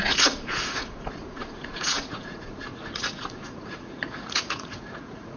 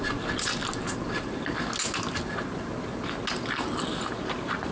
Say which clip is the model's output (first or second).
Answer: first